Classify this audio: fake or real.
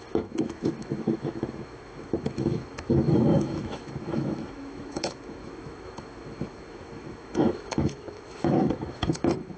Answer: fake